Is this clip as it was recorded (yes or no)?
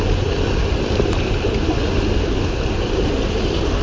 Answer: yes